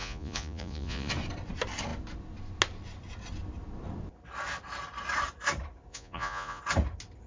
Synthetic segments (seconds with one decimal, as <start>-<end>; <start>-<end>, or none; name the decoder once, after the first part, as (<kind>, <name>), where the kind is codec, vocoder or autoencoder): 0.0-1.1 (vocoder, Vocos); 5.9-6.6